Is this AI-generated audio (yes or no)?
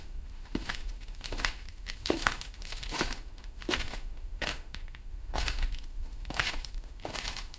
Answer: yes